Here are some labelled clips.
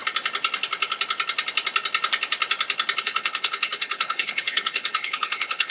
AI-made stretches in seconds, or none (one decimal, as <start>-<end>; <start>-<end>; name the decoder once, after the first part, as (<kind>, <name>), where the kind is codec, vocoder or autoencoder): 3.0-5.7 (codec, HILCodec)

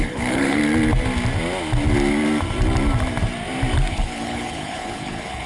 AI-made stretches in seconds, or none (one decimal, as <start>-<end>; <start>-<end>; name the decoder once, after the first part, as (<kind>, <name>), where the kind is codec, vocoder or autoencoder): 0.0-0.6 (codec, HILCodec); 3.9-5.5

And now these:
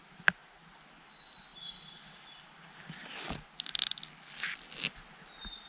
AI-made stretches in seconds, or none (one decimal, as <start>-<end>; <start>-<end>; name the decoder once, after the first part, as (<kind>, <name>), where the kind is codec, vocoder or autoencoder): none

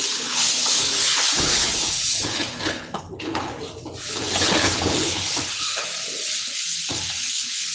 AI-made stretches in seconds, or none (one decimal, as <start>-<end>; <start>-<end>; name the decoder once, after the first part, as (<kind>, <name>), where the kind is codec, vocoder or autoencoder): 0.0-3.5 (codec, HILCodec); 4.1-5.9; 6.4-7.7

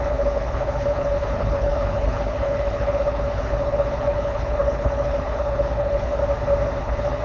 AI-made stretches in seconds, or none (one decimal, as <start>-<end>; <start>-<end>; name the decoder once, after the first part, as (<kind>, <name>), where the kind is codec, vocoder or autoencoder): 0.0-6.2 (codec, HILCodec); 6.8-7.2

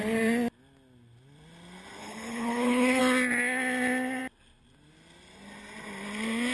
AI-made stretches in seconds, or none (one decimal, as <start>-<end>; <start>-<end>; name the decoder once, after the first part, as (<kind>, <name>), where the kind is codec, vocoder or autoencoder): 2.0-3.0 (codec, HILCodec)

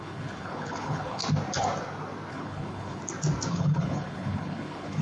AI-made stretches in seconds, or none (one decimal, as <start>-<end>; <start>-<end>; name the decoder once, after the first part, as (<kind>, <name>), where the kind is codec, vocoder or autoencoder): 0.0-1.2 (codec, HILCodec); 2.3-3.0; 3.5-5.0

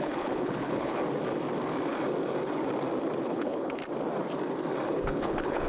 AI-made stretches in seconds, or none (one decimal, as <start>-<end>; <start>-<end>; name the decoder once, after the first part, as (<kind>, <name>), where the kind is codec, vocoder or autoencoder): 0.0-1.0 (codec, HILCodec); 3.2-3.8; 4.9-5.7